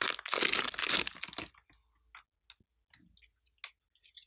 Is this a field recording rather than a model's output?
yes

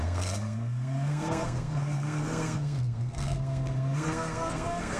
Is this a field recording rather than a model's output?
no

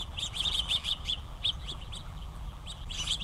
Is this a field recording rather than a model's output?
no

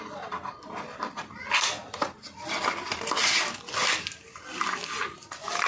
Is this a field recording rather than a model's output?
yes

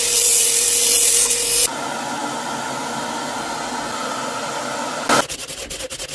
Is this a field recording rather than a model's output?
yes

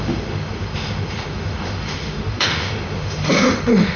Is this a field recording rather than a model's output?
no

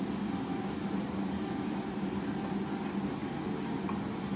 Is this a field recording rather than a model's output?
yes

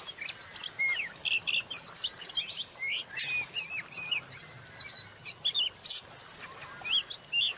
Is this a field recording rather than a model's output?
yes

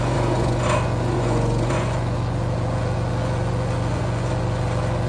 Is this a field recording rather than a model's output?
no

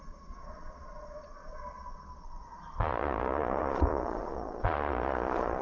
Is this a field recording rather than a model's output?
no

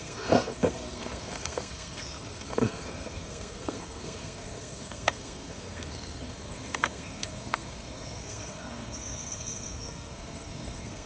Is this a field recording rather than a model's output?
no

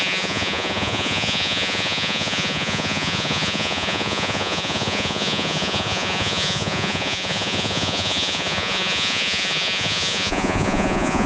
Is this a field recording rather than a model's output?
no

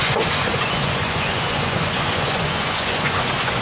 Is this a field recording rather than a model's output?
no